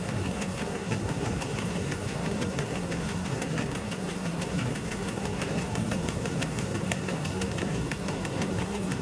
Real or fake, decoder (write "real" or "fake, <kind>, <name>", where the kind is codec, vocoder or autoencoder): fake, codec, SNAC